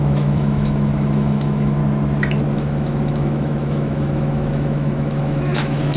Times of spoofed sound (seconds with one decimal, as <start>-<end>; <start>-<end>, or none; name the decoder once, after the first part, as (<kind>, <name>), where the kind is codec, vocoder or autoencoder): 0.0-1.8 (autoencoder, DAC-VAE); 2.5-6.0